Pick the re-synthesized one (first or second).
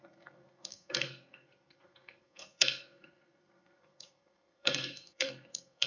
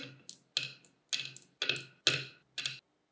first